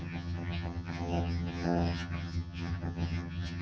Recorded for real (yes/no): no